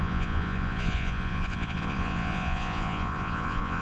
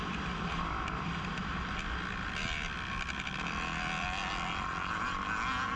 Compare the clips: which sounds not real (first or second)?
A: first